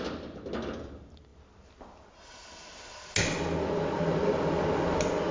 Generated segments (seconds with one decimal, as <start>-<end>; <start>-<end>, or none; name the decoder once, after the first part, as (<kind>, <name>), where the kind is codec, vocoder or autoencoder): none